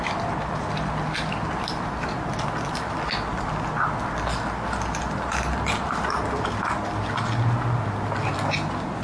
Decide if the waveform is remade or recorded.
recorded